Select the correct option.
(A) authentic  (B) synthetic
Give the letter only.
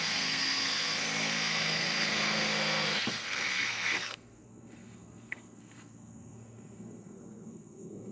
B